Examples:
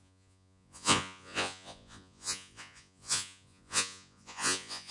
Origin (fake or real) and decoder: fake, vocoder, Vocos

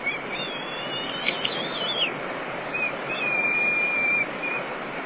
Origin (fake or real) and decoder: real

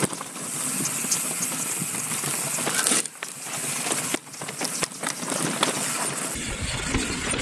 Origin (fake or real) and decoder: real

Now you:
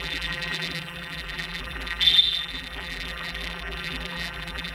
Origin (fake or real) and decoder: fake, vocoder, BigVGAN v2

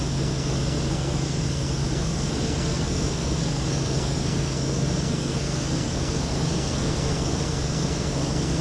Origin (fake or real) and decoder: fake, codec, SNAC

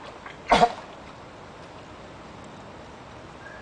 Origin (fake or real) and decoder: real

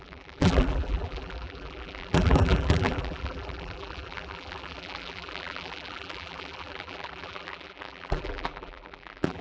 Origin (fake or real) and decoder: fake, vocoder, BigVGAN v2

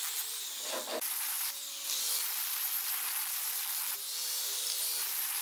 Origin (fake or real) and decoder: real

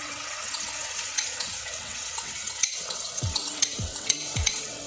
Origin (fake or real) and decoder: fake, vocoder, WaveNeXt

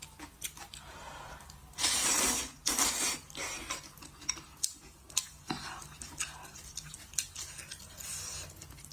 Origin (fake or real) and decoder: real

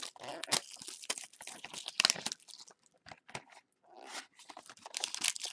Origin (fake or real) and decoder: real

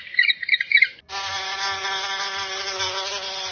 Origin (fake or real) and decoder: real